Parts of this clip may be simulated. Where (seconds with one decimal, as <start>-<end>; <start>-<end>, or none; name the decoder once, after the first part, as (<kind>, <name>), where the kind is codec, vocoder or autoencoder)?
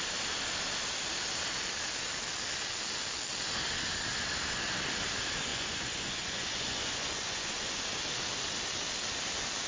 5.5-7.8 (vocoder, Vocos)